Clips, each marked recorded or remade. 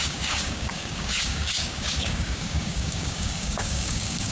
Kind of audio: remade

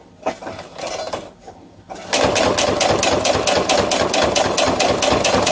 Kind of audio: recorded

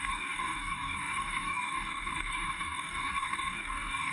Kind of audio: remade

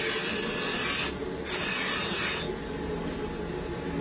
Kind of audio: recorded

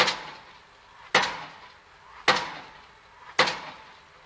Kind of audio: recorded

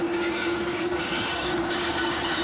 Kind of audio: remade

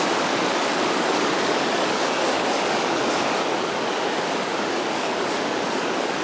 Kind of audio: remade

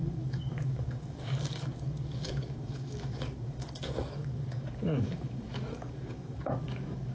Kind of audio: remade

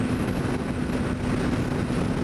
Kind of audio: recorded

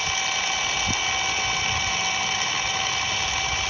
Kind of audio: recorded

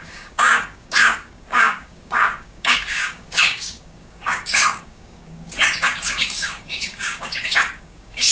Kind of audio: remade